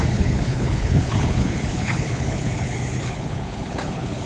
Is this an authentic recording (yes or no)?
no